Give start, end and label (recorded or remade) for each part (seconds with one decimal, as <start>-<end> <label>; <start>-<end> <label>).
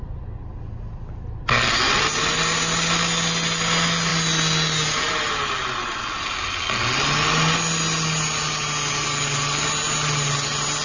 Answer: 0.0-10.8 recorded